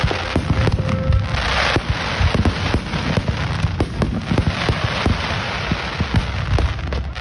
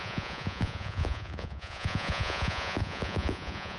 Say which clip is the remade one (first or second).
second